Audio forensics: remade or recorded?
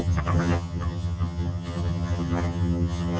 remade